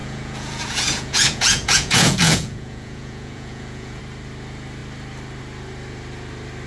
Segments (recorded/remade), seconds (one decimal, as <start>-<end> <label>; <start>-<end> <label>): 0.0-4.0 remade; 4.0-6.7 recorded